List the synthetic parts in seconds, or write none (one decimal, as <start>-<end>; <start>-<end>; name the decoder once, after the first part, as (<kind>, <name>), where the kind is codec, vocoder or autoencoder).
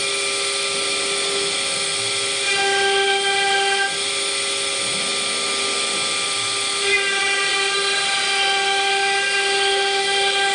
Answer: none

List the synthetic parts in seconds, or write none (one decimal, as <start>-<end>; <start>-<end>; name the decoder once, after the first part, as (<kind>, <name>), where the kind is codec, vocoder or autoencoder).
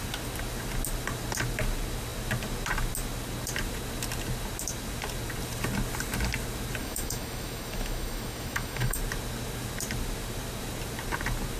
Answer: 6.8-9.0 (autoencoder, DAC-VAE)